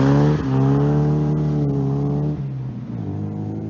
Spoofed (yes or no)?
no